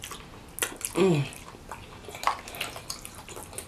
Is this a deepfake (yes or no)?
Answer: no